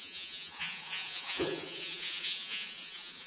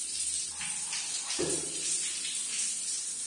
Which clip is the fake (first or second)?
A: first